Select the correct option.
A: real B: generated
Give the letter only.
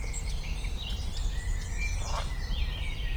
A